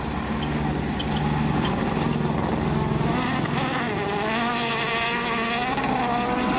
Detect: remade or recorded recorded